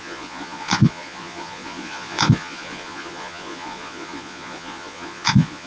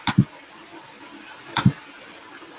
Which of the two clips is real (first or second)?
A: second